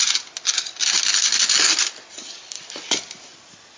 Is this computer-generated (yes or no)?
no